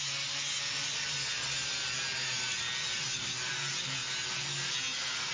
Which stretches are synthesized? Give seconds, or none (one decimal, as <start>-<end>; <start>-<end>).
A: none